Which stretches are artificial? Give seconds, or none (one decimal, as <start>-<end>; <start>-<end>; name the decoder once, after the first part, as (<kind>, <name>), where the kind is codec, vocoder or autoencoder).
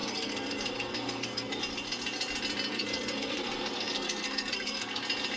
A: 0.0-1.6 (codec, SNAC); 2.7-5.0